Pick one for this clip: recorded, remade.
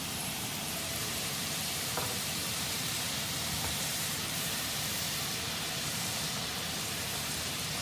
remade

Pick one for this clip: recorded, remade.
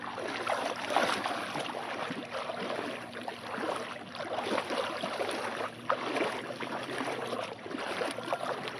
recorded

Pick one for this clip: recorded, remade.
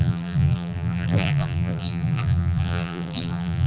remade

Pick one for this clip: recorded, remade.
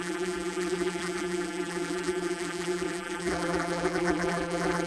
remade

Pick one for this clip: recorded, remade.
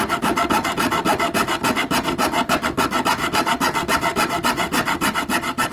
recorded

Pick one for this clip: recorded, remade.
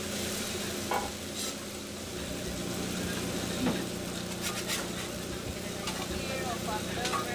recorded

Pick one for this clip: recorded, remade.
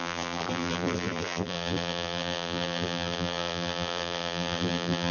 remade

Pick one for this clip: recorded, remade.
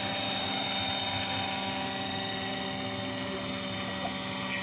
recorded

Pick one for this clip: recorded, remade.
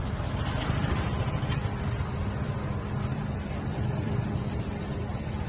remade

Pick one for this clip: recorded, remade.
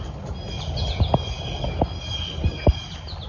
recorded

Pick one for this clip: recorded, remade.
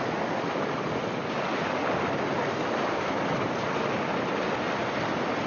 recorded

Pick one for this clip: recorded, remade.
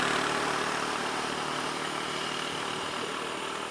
remade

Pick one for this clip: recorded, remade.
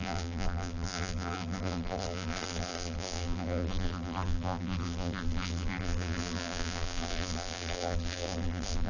remade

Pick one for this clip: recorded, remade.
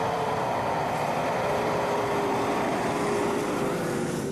remade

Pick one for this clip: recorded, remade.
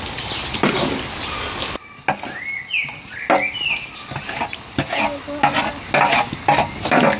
recorded